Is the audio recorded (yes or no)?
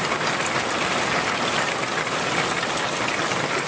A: yes